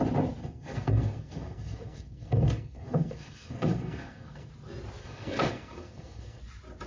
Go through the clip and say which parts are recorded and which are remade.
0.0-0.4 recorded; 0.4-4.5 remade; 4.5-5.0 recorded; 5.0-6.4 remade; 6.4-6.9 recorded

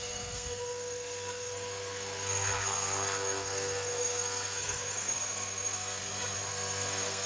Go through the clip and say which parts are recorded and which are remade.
0.0-6.0 remade; 6.0-6.5 recorded; 6.5-7.3 remade

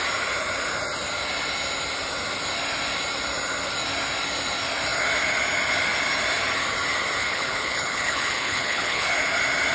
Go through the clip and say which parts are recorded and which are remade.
0.0-7.2 recorded; 7.2-9.1 remade; 9.1-9.7 recorded

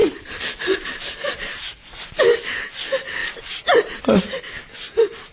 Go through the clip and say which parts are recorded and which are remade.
0.0-2.2 remade; 2.2-3.2 recorded; 3.2-4.0 remade; 4.0-5.3 recorded